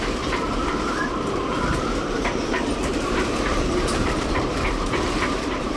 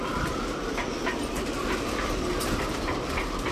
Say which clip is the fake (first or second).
first